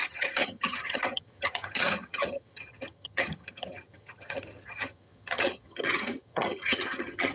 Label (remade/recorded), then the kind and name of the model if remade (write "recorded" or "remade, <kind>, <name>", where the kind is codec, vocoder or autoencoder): remade, vocoder, HiFi-GAN